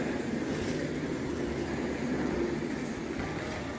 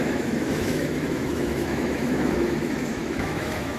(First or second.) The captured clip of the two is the first